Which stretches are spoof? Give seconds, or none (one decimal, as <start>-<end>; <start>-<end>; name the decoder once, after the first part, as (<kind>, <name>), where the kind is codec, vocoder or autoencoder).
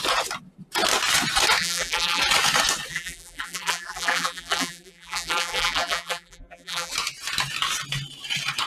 1.6-2.2 (vocoder, BigVGAN v2); 2.9-6.9